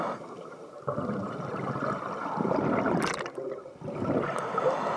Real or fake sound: real